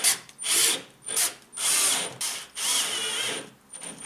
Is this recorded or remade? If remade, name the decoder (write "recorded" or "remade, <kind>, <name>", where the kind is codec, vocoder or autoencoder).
recorded